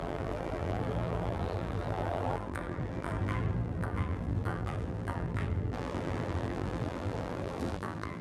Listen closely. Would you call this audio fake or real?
fake